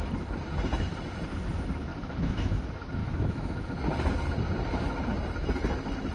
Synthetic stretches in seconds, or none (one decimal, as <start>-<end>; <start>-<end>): 1.9-2.6; 3.0-3.8